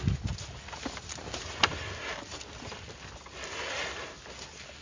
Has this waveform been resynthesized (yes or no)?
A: no